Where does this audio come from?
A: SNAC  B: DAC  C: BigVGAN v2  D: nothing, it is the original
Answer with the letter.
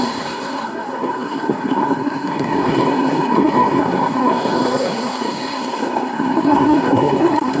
A